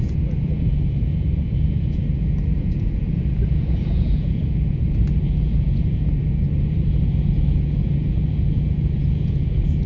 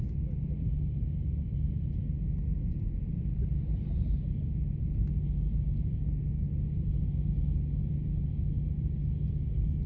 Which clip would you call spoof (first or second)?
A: first